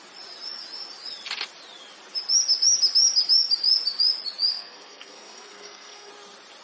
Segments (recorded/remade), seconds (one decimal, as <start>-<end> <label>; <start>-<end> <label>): 0.0-4.5 recorded; 4.5-6.1 remade; 6.1-6.6 recorded

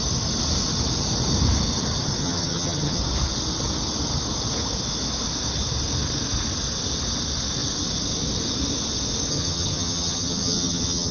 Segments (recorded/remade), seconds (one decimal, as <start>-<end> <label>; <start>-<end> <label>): 0.0-2.2 recorded; 2.2-3.0 remade; 3.0-9.3 recorded; 9.3-11.1 remade

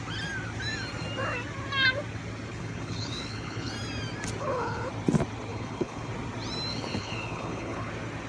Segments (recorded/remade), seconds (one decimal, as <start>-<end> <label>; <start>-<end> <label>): 0.0-2.5 recorded; 2.5-3.7 remade; 3.7-4.4 recorded; 4.4-4.9 remade; 4.9-5.5 recorded; 5.5-6.1 remade; 6.1-6.7 recorded; 6.7-7.9 remade; 7.9-8.3 recorded

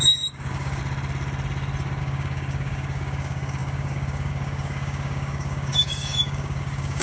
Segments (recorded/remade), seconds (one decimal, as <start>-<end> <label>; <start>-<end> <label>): 0.0-0.8 remade; 0.8-2.0 recorded; 2.0-7.0 remade